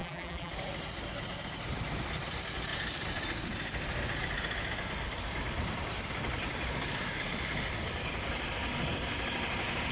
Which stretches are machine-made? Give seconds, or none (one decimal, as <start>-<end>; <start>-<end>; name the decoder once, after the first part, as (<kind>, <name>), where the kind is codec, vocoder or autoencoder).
0.0-0.5 (vocoder, BigVGAN v2)